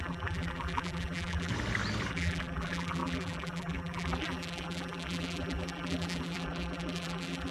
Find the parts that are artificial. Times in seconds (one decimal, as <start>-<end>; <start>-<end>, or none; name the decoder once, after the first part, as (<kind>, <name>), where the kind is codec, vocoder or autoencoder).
0.0-1.5 (vocoder, BigVGAN v2); 2.1-7.5